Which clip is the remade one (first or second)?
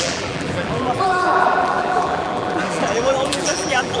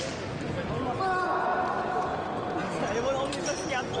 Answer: first